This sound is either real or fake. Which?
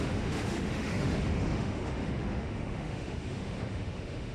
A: fake